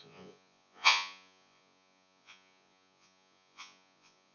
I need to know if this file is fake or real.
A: fake